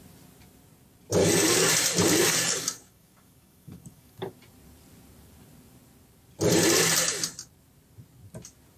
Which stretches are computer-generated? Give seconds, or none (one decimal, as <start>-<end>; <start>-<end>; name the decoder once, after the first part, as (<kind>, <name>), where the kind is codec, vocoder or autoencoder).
1.2-1.7 (codec, DAC); 2.2-4.3